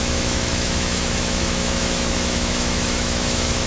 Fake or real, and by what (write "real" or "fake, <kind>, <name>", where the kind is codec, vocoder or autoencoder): fake, autoencoder, DAC-VAE